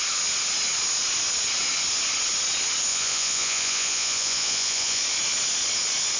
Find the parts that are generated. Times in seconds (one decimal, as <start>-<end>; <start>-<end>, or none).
2.9-5.0